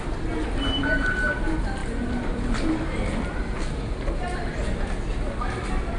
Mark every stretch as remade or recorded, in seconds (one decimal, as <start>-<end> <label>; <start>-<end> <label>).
0.0-6.0 recorded